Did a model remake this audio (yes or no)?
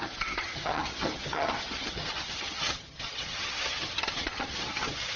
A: yes